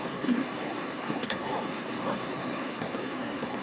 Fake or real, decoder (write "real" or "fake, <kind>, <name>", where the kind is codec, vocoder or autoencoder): fake, codec, SNAC